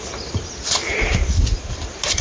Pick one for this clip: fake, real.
real